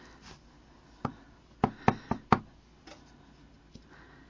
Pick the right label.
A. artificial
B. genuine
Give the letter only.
B